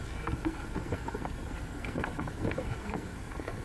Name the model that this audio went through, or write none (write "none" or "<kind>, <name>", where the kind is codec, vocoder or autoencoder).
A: codec, SNAC